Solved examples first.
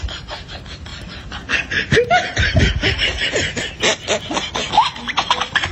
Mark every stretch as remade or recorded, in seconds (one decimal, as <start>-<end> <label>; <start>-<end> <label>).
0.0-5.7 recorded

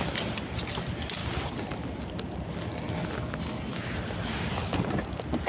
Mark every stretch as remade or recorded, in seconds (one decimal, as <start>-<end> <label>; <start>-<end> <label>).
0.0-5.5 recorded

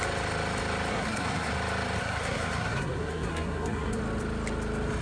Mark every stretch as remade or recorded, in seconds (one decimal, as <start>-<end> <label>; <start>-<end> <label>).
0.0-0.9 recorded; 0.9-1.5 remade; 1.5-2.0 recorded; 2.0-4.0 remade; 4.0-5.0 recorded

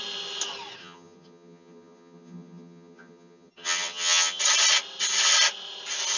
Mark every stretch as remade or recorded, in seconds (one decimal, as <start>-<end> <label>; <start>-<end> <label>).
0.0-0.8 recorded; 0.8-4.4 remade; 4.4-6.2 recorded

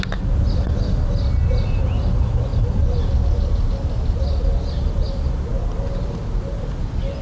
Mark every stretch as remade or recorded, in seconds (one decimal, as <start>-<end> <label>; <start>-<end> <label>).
0.0-2.5 recorded; 2.5-3.0 remade; 3.0-7.2 recorded